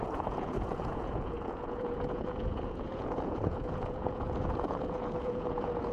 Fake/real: fake